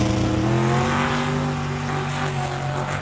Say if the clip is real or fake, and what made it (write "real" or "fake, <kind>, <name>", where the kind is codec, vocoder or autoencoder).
real